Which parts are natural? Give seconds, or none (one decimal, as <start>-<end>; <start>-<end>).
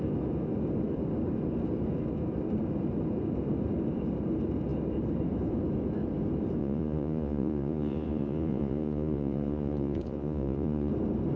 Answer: 0.0-6.6; 10.9-11.4